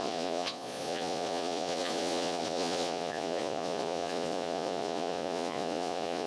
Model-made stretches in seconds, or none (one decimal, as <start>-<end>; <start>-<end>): 0.0-6.3